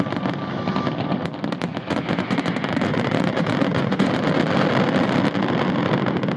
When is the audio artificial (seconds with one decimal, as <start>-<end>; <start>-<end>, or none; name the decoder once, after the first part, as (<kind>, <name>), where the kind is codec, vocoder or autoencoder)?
1.7-4.3 (vocoder, Vocos)